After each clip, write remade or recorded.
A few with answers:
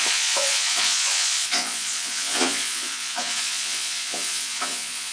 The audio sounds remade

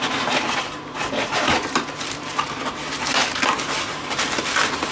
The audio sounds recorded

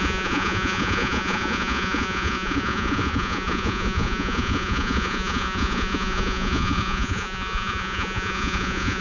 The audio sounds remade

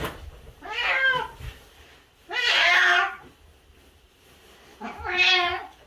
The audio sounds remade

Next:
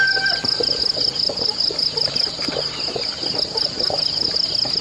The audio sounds recorded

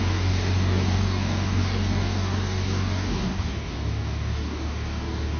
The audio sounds remade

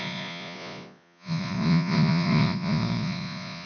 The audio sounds remade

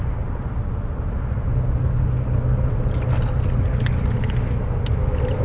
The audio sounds recorded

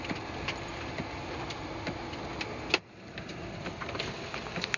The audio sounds recorded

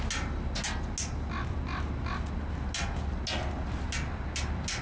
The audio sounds recorded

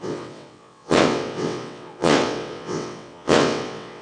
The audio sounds remade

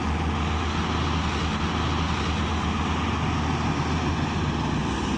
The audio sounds recorded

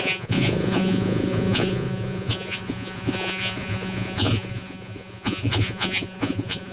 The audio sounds remade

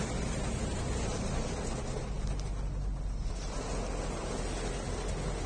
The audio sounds recorded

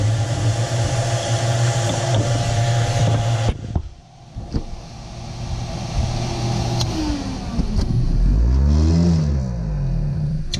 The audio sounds recorded